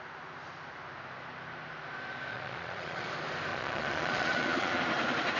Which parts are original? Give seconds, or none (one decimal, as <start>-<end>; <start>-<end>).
0.0-2.3; 3.1-3.5; 4.8-5.4